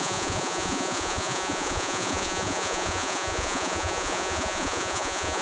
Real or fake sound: fake